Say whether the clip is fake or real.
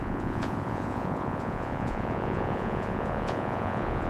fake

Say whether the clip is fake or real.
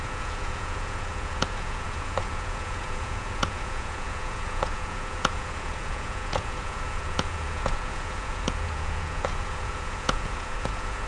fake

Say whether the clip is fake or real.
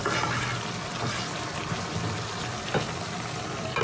real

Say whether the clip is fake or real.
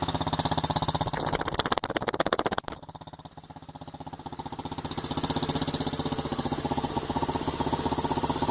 real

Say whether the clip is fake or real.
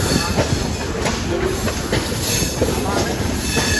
real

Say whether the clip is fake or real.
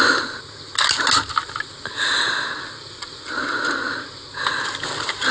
real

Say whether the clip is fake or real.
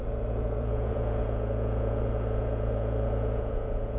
fake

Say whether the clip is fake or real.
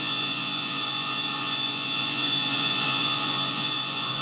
fake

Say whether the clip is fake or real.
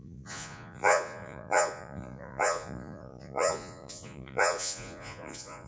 fake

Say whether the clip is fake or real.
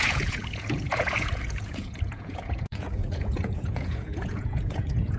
fake